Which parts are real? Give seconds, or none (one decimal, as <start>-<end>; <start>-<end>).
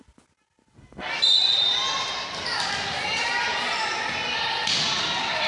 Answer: 0.0-5.5